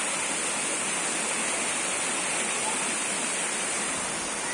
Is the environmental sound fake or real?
real